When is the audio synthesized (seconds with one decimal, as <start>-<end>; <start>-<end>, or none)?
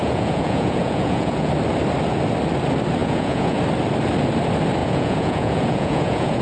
0.0-1.5; 3.0-3.6; 4.8-6.4